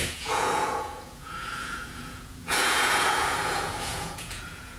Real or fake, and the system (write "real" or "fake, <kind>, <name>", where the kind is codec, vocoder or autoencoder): fake, vocoder, Vocos